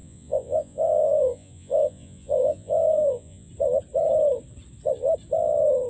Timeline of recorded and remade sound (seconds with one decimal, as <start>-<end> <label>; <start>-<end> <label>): 0.0-3.5 remade; 3.5-5.9 recorded